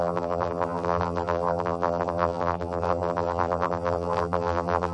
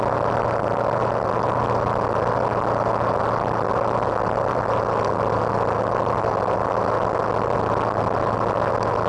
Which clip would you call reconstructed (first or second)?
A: first